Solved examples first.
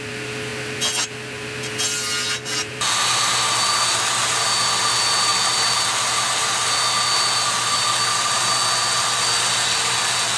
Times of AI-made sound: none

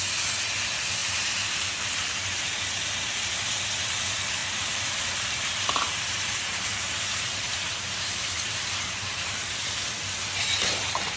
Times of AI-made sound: 1.0-2.6 (vocoder, BigVGAN v2); 4.4-9.5